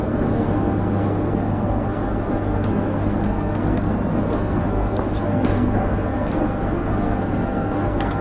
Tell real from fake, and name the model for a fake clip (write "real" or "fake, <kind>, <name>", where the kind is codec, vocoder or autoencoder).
fake, codec, SNAC